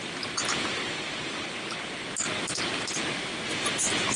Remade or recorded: recorded